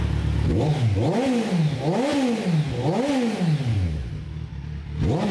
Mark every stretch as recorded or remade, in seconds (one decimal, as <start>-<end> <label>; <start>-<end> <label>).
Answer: 0.0-5.3 recorded